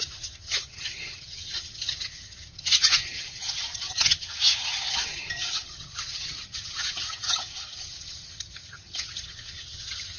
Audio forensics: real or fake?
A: fake